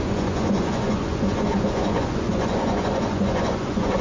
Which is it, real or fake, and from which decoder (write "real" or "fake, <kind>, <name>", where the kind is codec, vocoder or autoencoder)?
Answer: fake, vocoder, Vocos